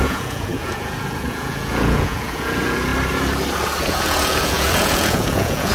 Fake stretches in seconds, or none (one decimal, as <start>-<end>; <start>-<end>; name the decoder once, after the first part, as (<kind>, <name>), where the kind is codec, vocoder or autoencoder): 0.0-2.9 (vocoder, Vocos); 3.8-5.7